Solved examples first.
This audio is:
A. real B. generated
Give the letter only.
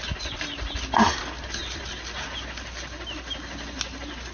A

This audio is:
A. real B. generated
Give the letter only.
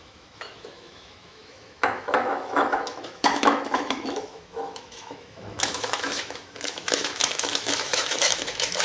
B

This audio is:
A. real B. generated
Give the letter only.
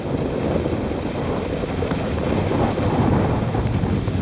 A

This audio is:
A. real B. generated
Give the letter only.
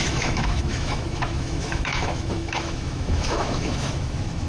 B